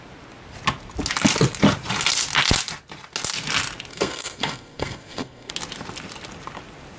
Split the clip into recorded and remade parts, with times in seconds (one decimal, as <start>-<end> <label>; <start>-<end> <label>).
0.0-3.9 recorded; 3.9-5.5 remade; 5.5-7.0 recorded